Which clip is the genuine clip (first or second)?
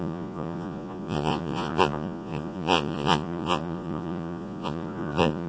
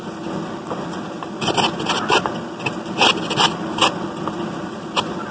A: second